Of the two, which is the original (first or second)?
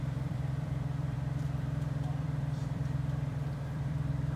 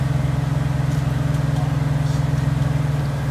second